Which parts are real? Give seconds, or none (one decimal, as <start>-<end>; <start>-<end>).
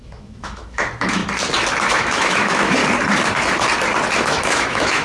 1.2-1.9; 2.8-4.2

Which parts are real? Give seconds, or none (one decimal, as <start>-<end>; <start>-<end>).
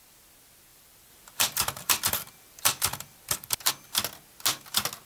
0.0-0.7; 3.7-5.0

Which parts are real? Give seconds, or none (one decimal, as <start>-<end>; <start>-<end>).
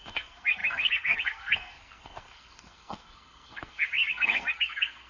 none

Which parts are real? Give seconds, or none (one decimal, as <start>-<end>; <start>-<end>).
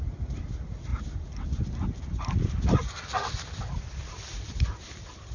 0.0-5.3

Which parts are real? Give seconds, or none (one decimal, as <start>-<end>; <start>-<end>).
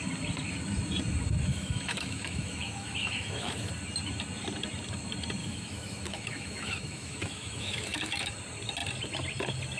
0.0-1.5; 3.7-5.4; 8.3-9.8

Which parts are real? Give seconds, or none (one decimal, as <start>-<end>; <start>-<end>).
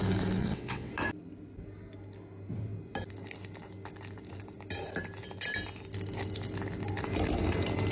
0.0-0.4; 0.9-7.9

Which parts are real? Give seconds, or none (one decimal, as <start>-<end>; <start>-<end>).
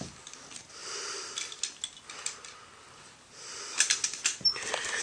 0.0-5.0